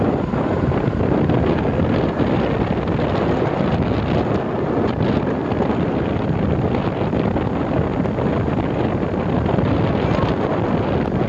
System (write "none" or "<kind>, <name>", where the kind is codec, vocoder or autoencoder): none